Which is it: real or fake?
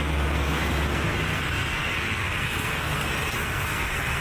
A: fake